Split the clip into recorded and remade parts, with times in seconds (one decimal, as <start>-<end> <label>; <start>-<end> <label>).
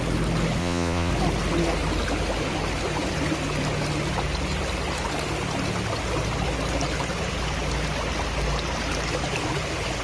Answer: 0.0-0.6 recorded; 0.6-1.1 remade; 1.1-10.0 recorded